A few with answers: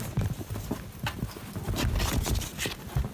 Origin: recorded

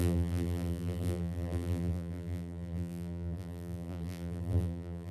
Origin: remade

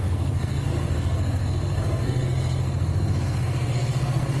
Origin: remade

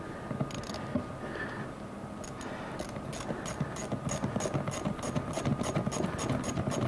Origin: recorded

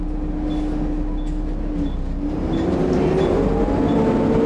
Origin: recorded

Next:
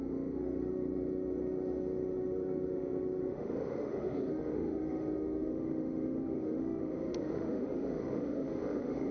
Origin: remade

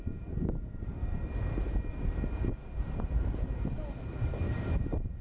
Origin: remade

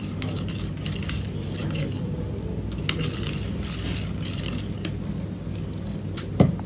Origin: recorded